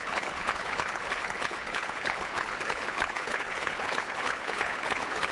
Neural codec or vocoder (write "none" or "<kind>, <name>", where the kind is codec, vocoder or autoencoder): codec, HILCodec